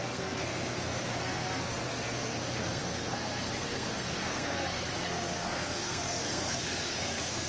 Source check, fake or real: fake